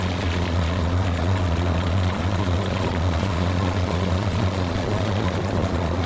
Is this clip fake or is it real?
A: fake